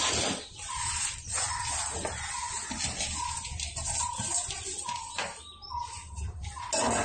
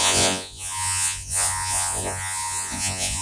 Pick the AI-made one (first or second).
second